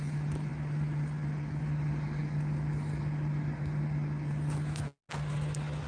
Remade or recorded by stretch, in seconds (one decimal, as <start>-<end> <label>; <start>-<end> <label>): 0.0-0.5 remade; 0.5-1.6 recorded; 1.6-2.2 remade; 2.2-5.9 recorded